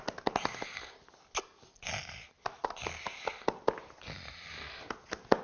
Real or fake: real